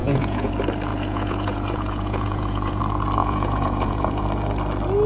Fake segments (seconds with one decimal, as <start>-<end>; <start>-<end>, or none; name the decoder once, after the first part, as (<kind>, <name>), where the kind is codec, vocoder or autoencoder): 0.0-0.5 (vocoder, Vocos); 0.9-2.8; 3.2-4.2